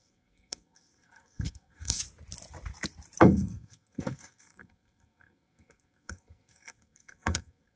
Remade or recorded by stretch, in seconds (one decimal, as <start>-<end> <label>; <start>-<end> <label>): 0.0-2.0 remade; 2.0-3.2 recorded; 3.2-7.8 remade